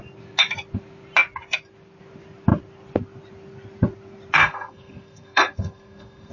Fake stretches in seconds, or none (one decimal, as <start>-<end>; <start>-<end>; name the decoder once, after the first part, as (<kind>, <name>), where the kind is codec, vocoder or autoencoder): 4.4-6.3 (codec, SNAC)